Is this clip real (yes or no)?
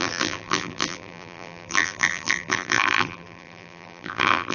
no